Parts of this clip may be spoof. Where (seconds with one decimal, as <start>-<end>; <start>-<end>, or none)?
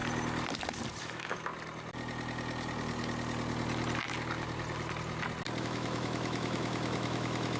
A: 1.0-1.5; 5.6-7.6